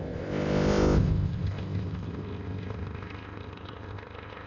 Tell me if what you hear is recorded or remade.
remade